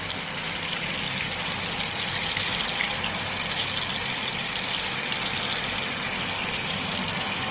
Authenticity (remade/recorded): recorded